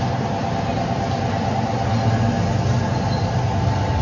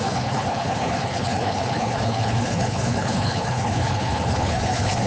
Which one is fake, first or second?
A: second